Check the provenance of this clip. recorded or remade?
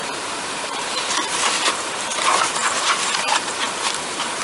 remade